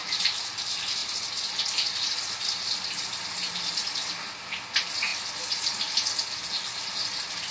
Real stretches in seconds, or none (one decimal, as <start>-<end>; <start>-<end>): 1.0-3.7; 5.1-6.5